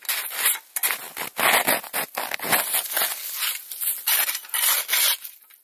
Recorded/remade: recorded